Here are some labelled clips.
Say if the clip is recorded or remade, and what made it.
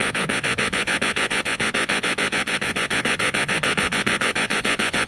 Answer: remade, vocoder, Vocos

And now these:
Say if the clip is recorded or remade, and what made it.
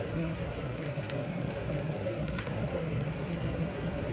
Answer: remade, codec, SNAC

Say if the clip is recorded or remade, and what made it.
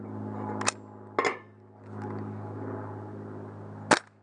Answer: recorded